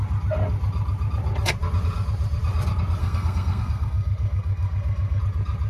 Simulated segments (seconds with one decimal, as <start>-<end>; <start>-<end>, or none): 3.0-5.2